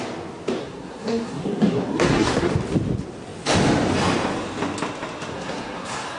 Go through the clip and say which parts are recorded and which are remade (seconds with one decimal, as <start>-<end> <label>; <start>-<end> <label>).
0.0-0.6 recorded; 0.6-2.5 remade; 2.5-5.3 recorded; 5.3-6.2 remade